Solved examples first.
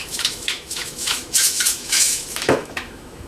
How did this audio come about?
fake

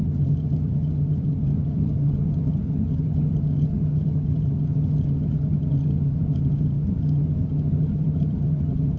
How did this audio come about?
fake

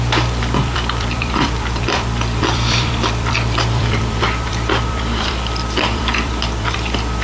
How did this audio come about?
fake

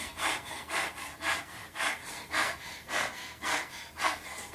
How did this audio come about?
fake